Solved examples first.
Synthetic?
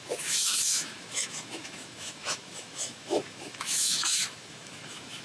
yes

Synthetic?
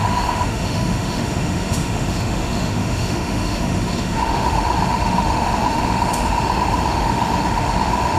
yes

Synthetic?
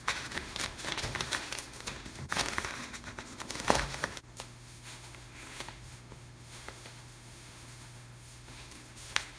yes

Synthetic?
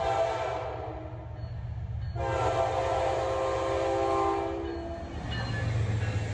no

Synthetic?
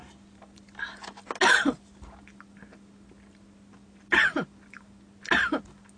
no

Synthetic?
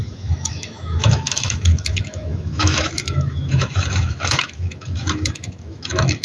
yes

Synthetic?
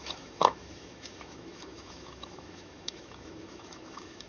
yes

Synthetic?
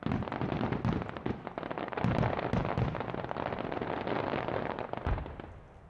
no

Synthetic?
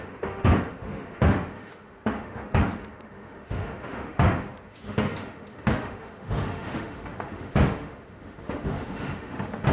yes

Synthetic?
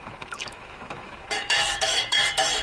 yes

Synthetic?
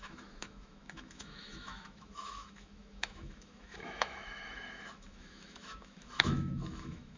yes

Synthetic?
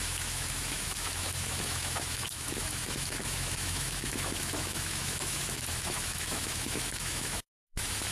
yes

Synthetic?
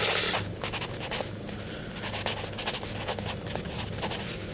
no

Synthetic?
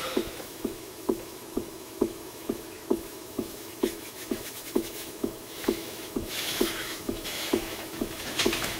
yes